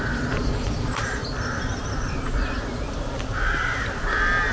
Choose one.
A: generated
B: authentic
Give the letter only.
B